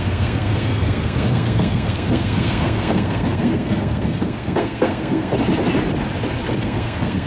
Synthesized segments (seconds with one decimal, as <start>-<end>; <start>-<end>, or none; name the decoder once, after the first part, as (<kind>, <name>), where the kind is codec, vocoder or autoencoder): 0.0-5.3 (codec, SNAC); 6.6-7.3